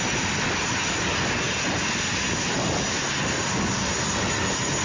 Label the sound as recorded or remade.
recorded